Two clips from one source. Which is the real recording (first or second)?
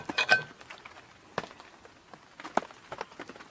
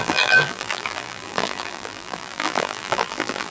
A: first